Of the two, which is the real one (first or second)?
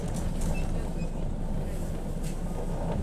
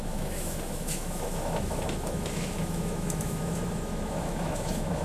first